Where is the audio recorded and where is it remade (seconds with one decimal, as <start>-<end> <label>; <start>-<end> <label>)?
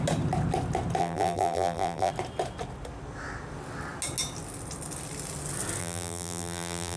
0.0-1.0 recorded; 1.0-2.1 remade; 2.1-5.8 recorded; 5.8-7.0 remade